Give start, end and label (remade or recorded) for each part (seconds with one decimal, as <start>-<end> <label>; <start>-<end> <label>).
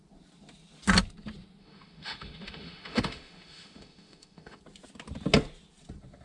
0.0-1.6 recorded; 1.6-4.6 remade; 4.6-6.2 recorded